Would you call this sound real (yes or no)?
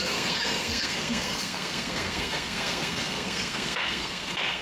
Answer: no